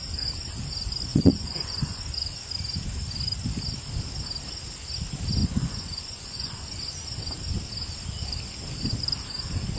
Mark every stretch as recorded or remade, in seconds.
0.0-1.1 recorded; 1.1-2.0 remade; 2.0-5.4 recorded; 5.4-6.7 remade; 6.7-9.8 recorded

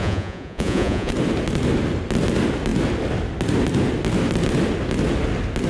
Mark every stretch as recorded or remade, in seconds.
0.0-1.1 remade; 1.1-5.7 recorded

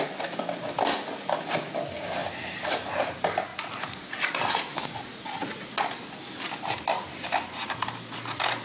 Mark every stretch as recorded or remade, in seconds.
0.0-3.5 recorded; 3.5-5.7 remade; 5.7-8.6 recorded